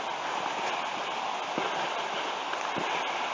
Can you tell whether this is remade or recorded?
recorded